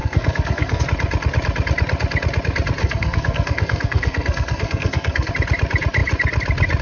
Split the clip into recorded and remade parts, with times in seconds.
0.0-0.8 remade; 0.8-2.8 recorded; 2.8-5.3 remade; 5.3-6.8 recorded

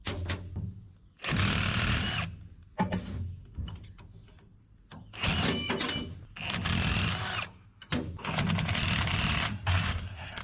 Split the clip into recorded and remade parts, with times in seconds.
0.0-9.5 recorded; 9.5-10.4 remade

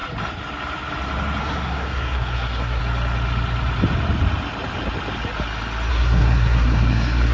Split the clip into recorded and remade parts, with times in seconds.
0.0-1.4 recorded; 1.4-2.8 remade; 2.8-5.9 recorded; 5.9-7.3 remade

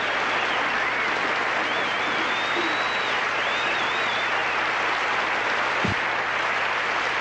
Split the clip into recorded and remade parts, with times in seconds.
0.0-7.2 recorded

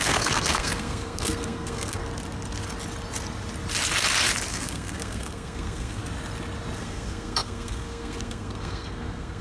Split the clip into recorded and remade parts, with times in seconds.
0.0-2.0 remade; 2.0-4.5 recorded; 4.5-6.0 remade; 6.0-6.8 recorded; 6.8-9.4 remade

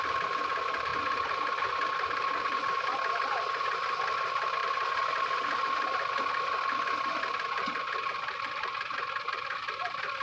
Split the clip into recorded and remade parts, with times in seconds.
0.0-10.2 recorded

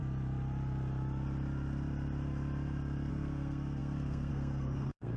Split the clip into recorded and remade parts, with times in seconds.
0.0-3.1 recorded; 3.1-5.2 remade

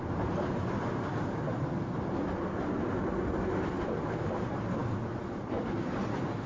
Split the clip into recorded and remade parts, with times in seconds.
0.0-6.5 recorded